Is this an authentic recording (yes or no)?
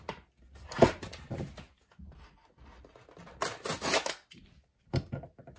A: yes